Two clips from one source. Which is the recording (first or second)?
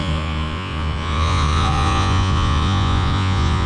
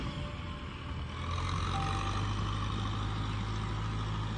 second